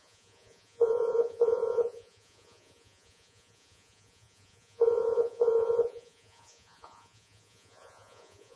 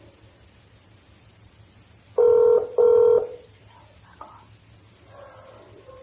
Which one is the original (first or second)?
second